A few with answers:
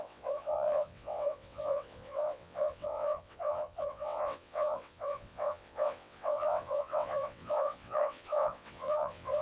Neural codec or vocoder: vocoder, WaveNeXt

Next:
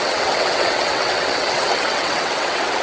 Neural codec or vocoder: vocoder, WaveNeXt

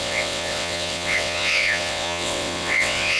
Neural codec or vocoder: vocoder, WaveNeXt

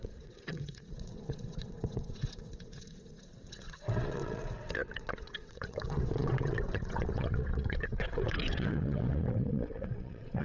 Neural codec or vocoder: vocoder, WaveNeXt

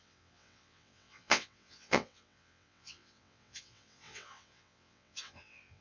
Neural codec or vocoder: vocoder, WaveNeXt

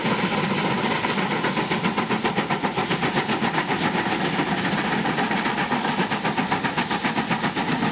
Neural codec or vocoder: none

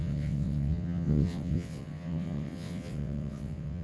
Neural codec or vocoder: vocoder, WaveNeXt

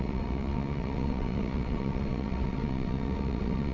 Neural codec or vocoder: vocoder, WaveNeXt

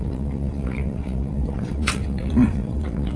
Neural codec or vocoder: vocoder, WaveNeXt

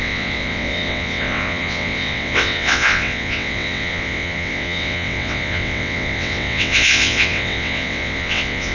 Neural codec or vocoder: vocoder, WaveNeXt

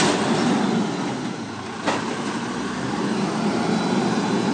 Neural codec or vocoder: none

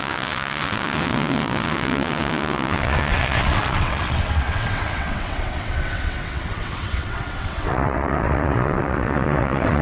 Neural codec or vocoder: vocoder, WaveNeXt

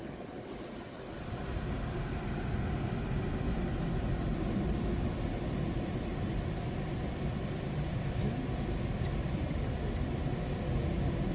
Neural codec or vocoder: none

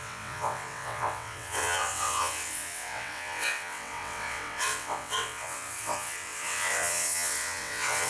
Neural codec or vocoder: vocoder, WaveNeXt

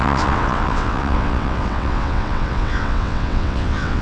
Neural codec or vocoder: vocoder, WaveNeXt